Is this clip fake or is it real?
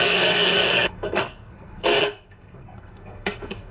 fake